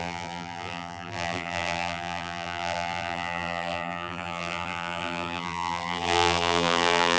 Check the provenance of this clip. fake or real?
fake